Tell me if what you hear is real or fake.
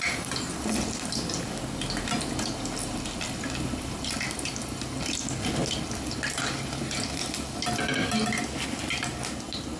real